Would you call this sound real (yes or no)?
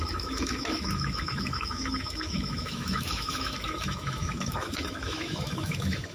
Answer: no